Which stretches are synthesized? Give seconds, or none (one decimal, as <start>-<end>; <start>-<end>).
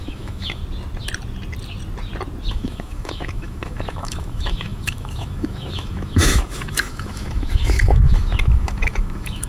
0.0-0.6; 2.5-9.5